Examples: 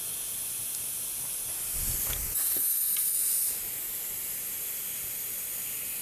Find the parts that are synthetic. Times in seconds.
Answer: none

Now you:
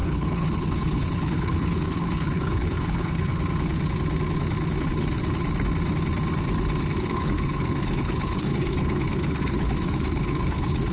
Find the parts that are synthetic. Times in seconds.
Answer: 0.0-3.3 (codec, HILCodec); 4.8-5.2; 7.0-10.9

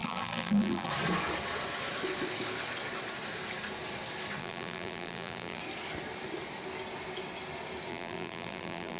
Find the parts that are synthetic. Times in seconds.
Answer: 0.0-0.9 (vocoder, BigVGAN v2); 4.4-5.6; 7.9-9.0

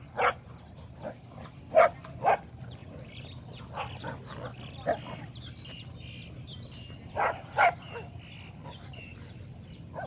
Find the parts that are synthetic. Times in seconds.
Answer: none